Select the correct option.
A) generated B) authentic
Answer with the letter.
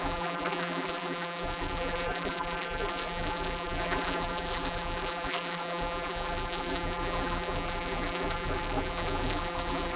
A